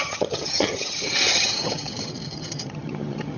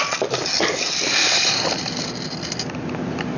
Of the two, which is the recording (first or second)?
second